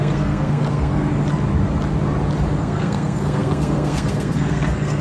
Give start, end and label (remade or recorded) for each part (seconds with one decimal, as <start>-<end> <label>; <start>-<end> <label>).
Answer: 0.0-1.1 remade; 1.1-2.6 recorded; 2.6-5.0 remade

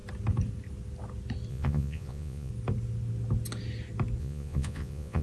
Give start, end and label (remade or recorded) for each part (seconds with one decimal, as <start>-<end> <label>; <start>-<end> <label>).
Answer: 0.0-1.5 recorded; 1.5-2.5 remade; 2.5-4.2 recorded; 4.2-5.2 remade

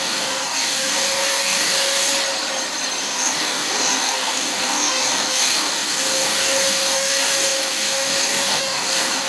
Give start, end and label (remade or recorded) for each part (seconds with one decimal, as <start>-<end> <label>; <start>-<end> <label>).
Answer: 0.0-2.1 remade; 2.1-3.0 recorded; 3.0-9.3 remade

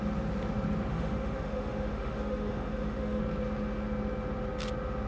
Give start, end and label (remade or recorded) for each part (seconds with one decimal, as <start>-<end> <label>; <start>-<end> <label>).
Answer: 0.0-0.9 recorded; 0.9-3.2 remade; 3.2-5.1 recorded

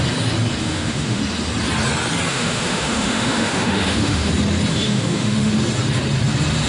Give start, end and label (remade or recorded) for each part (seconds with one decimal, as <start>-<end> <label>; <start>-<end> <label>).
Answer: 0.0-0.6 recorded; 0.6-1.2 remade; 1.2-2.3 recorded; 2.3-4.3 remade; 4.3-4.7 recorded; 4.7-5.5 remade; 5.5-6.7 recorded

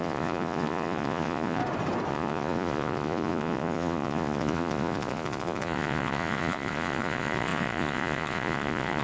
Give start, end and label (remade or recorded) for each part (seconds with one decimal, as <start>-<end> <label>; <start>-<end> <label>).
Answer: 0.0-1.6 remade; 1.6-2.1 recorded; 2.1-9.0 remade

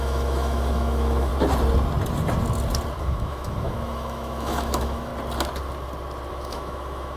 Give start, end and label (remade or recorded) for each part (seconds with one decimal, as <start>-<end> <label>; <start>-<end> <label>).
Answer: 0.0-1.3 remade; 1.3-3.0 recorded; 3.0-5.1 remade; 5.1-6.3 recorded; 6.3-7.2 remade

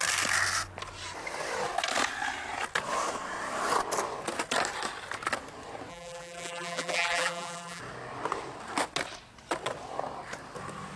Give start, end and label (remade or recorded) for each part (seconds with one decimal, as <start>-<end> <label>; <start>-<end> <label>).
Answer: 0.0-5.9 recorded; 5.9-7.8 remade; 7.8-11.0 recorded